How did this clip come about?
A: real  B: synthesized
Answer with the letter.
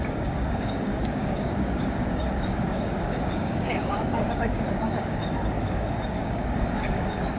B